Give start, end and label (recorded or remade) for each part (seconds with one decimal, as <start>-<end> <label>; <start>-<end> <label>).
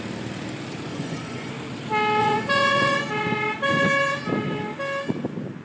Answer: 0.0-0.9 recorded; 0.9-1.5 remade; 1.5-2.2 recorded; 2.2-3.1 remade; 3.1-5.6 recorded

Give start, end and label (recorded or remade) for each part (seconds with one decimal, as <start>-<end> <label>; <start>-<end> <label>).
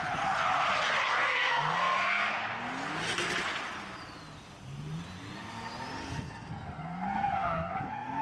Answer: 0.0-1.2 recorded; 1.2-2.3 remade; 2.3-6.0 recorded; 6.0-8.2 remade